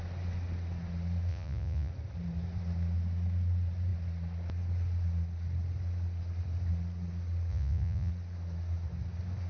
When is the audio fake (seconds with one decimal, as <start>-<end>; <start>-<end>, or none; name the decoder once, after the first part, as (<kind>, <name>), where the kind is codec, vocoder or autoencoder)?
1.3-1.9 (vocoder, Vocos); 7.5-8.1